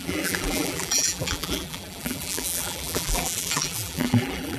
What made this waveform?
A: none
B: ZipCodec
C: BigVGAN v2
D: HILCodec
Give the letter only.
C